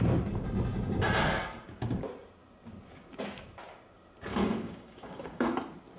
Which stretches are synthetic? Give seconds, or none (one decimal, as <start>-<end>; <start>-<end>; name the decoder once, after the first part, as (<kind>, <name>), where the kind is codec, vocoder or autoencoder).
4.3-5.5 (codec, DAC)